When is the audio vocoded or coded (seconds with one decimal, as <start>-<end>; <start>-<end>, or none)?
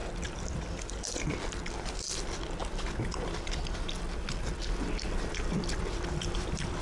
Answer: 2.6-6.8